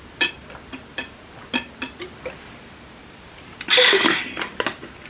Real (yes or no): yes